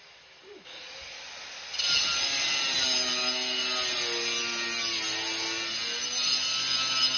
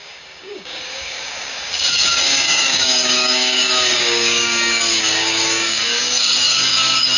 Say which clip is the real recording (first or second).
first